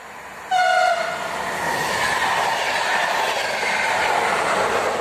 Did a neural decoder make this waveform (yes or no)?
no